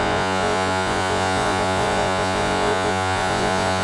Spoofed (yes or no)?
yes